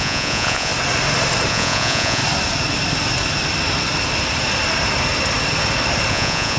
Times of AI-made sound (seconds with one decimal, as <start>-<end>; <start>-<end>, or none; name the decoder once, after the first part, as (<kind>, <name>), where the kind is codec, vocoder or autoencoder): 0.0-0.7 (vocoder, Vocos); 1.5-2.2; 6.1-6.6